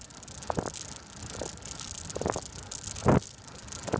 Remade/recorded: recorded